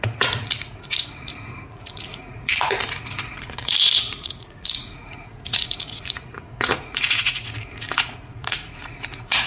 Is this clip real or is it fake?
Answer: fake